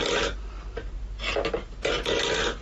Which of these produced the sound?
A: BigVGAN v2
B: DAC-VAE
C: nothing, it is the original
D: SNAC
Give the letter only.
C